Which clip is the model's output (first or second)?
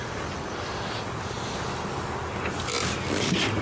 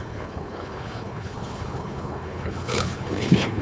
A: second